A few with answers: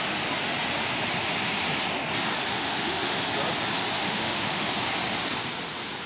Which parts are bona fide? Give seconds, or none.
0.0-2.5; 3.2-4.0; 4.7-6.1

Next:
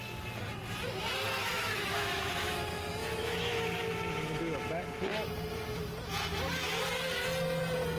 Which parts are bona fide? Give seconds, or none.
0.0-1.4; 2.5-3.2; 4.4-8.0

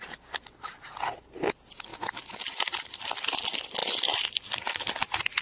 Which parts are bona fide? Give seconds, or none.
0.0-5.4

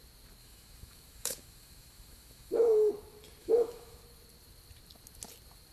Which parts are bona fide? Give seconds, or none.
0.0-0.4; 2.9-3.4; 4.0-5.7

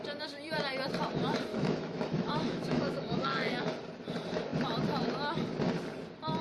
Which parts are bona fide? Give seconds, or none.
0.0-1.5; 3.6-6.4